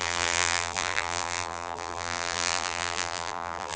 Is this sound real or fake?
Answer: fake